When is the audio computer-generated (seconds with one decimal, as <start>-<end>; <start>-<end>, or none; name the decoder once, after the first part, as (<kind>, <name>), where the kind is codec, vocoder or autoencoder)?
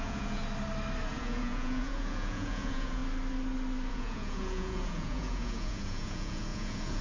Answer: 0.0-0.4 (vocoder, Vocos); 1.1-3.0; 3.9-7.0